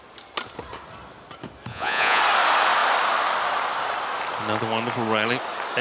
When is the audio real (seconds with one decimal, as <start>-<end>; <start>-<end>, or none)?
0.0-1.7; 2.2-5.8